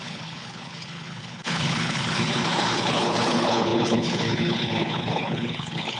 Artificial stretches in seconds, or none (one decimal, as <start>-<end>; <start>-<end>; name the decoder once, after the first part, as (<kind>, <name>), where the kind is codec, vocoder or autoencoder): 0.0-6.0 (codec, HILCodec)